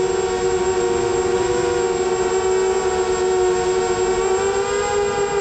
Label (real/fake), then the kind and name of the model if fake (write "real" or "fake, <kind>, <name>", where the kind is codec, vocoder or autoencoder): real